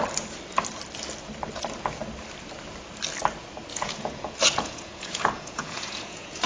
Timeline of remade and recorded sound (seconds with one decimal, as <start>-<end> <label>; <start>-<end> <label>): 0.0-3.7 recorded; 3.7-6.5 remade